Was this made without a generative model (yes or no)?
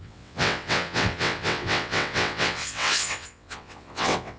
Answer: no